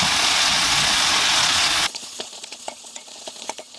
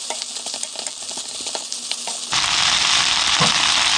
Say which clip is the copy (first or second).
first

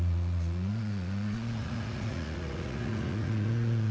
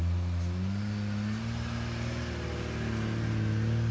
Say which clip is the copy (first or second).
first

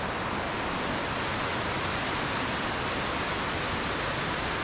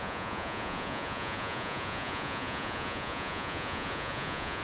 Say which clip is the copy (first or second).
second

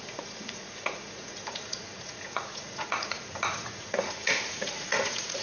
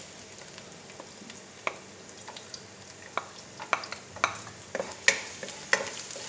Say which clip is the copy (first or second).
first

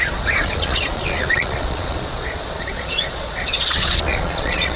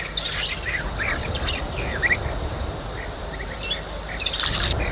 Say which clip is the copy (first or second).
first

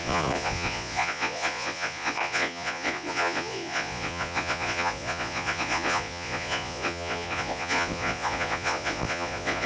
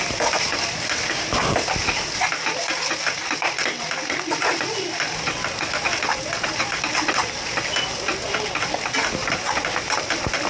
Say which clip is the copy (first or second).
first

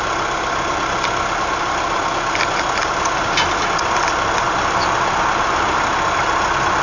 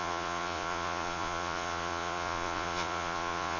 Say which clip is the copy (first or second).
second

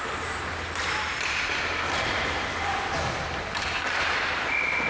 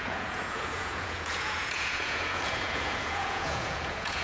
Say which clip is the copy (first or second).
second